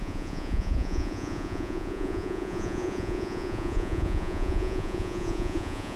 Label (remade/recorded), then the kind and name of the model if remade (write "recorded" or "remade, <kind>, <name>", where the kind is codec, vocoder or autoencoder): remade, vocoder, Vocos